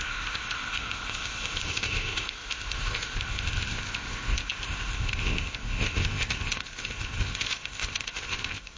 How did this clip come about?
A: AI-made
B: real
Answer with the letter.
A